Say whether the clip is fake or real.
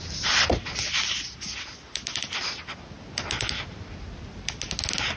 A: real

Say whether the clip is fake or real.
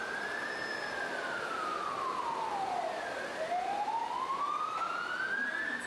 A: real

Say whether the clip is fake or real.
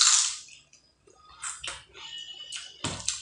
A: real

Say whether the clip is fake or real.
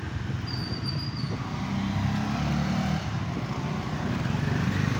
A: real